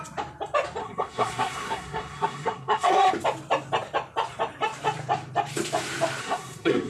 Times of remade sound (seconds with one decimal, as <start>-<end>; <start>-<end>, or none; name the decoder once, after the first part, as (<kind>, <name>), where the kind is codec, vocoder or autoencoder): 0.8-3.1 (codec, SNAC); 6.2-6.9